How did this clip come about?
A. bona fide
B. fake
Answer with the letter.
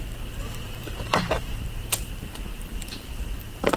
B